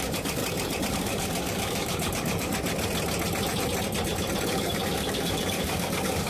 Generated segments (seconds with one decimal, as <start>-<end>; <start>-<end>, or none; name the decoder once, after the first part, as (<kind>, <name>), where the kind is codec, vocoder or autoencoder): 0.0-0.4 (codec, DAC); 0.9-2.5; 4.5-6.3